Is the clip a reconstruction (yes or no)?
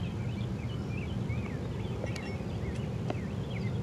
no